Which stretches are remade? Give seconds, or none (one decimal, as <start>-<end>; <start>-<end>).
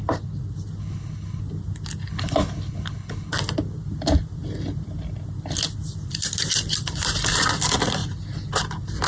0.8-1.4; 2.1-3.3